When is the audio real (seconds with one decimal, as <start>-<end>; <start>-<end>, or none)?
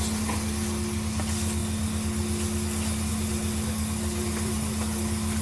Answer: 0.0-5.4